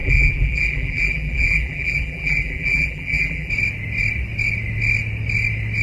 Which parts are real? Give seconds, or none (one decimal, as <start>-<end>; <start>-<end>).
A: 3.5-5.8

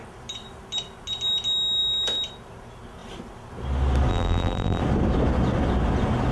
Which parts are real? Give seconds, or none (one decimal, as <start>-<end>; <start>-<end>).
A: 0.0-4.1; 4.8-6.3

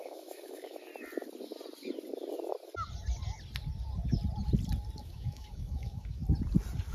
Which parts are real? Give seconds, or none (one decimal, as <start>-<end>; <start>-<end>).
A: 0.9-5.0; 6.2-6.9

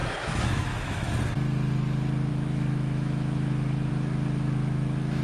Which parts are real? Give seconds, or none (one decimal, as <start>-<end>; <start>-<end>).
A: 1.1-2.3; 3.9-5.2

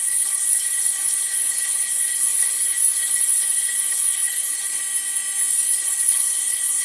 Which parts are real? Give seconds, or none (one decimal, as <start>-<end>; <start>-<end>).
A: 4.8-5.5

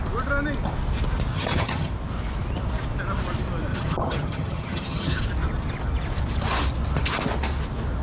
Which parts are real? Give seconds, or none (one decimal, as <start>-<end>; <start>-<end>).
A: 0.0-1.3; 1.9-3.7; 5.2-8.0

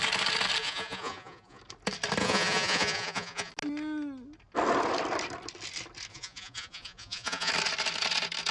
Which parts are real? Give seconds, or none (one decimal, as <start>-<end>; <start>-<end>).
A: 0.0-0.6; 1.6-2.2; 3.5-6.1; 7.5-8.5

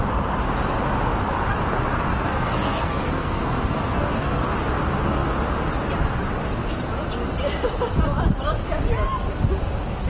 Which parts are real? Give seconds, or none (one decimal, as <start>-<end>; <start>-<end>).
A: 0.0-2.1; 4.4-10.1